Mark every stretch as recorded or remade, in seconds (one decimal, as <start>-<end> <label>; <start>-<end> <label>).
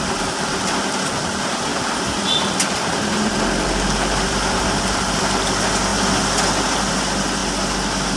0.0-5.9 remade; 5.9-6.9 recorded; 6.9-7.4 remade; 7.4-8.2 recorded